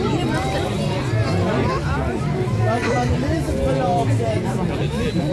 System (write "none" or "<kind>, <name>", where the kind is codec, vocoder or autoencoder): none